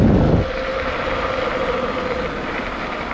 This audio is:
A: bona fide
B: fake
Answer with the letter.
A